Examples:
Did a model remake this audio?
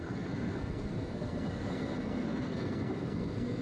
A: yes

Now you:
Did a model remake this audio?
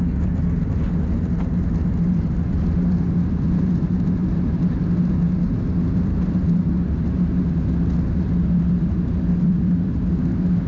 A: no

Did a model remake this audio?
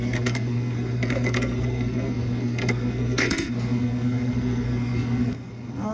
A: yes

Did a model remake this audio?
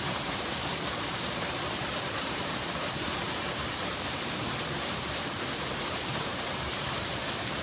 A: yes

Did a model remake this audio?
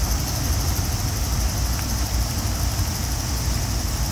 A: no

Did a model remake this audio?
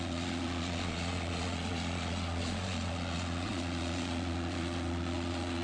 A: yes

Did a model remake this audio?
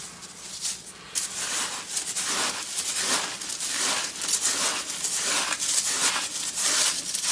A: no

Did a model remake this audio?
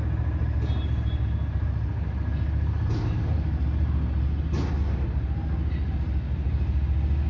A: no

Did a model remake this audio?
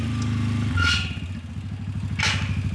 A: no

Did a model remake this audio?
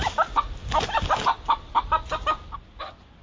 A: no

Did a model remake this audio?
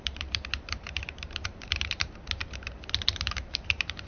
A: yes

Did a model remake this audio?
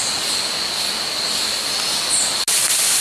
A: no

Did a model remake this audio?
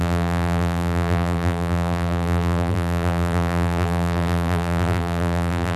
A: yes